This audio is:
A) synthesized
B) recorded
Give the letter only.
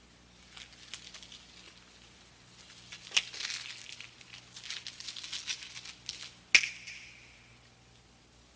B